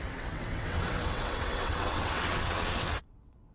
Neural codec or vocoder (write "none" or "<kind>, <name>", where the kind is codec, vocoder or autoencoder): vocoder, WaveNeXt